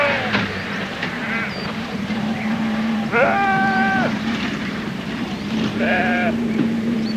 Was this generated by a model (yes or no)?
yes